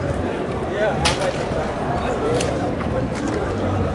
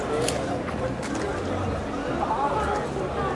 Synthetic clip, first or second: first